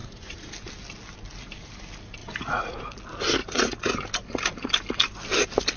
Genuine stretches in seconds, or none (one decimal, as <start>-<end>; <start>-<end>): 0.5-2.2; 2.8-3.4; 3.9-5.8